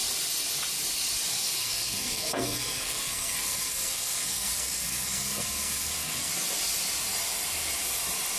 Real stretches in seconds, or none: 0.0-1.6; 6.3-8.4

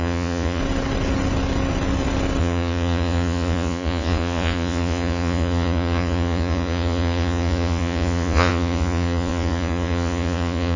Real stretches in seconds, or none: 0.6-2.4

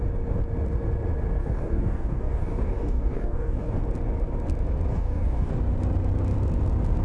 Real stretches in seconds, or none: 0.0-1.4; 3.7-4.9; 5.5-7.0

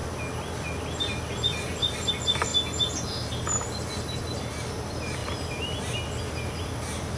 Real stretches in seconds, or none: 0.0-7.2

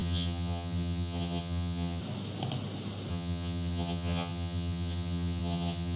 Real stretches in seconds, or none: 2.0-3.1